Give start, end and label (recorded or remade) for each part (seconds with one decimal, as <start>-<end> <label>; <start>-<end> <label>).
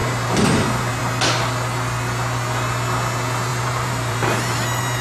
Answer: 0.0-1.0 remade; 1.0-3.5 recorded; 3.5-5.0 remade